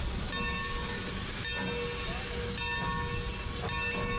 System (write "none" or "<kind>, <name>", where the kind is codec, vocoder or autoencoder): none